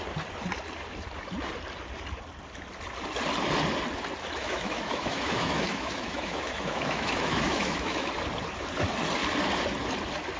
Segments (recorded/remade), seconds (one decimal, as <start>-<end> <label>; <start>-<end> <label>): 0.0-4.4 recorded; 4.4-8.1 remade; 8.1-10.4 recorded